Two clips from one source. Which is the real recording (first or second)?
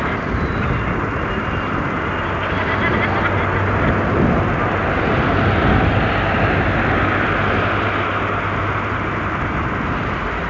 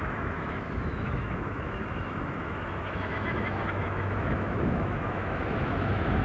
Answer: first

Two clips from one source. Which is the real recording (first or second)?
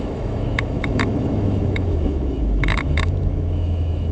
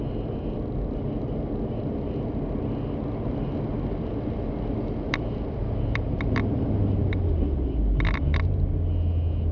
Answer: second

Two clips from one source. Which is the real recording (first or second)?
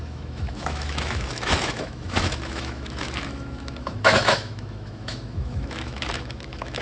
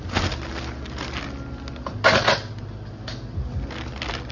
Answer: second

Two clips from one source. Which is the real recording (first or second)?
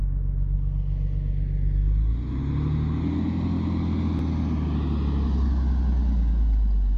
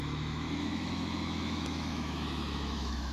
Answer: first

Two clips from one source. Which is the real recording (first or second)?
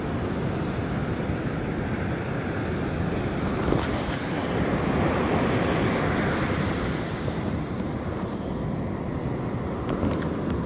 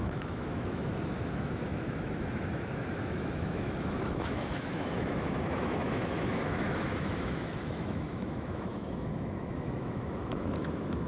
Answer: first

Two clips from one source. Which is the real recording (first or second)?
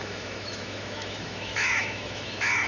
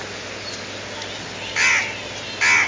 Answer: second